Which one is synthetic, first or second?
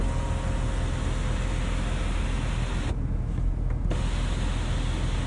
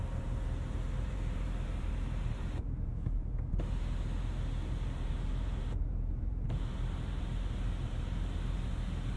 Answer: second